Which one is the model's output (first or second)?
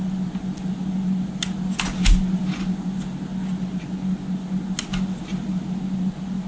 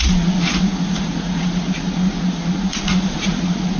second